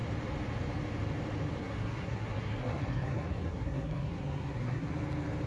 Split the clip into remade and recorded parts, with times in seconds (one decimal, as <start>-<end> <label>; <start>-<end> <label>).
0.0-1.6 recorded; 1.6-4.9 remade; 4.9-5.5 recorded